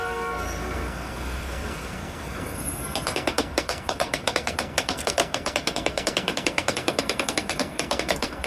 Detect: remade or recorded remade